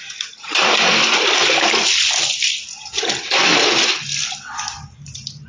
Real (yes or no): yes